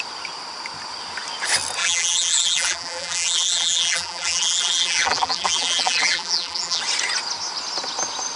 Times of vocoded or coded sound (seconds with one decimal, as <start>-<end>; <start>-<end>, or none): 1.8-6.8